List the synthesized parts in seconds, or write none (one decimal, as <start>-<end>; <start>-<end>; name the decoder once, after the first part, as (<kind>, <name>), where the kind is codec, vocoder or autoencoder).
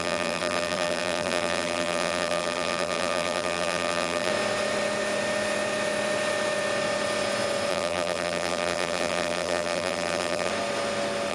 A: 0.0-4.3 (vocoder, BigVGAN v2); 7.7-10.5